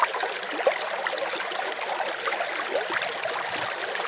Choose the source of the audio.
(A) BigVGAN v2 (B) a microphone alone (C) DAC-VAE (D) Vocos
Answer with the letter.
B